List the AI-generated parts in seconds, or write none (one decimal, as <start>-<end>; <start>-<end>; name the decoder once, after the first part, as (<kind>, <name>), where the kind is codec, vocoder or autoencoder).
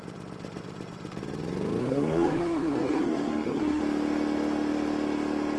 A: 1.8-3.8 (codec, SNAC)